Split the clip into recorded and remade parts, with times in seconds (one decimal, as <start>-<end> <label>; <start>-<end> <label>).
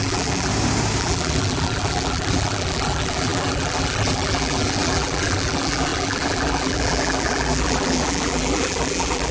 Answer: 0.0-0.5 remade; 0.5-1.0 recorded; 1.0-9.3 remade